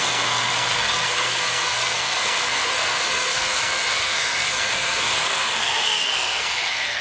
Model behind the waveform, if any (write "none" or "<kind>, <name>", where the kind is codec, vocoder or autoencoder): codec, SNAC